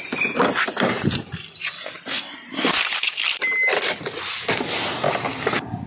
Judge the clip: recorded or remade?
recorded